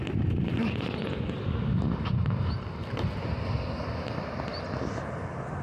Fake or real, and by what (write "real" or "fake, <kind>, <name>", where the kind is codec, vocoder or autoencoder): real